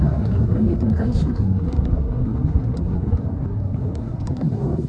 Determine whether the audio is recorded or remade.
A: remade